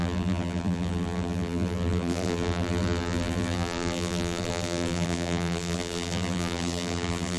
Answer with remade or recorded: remade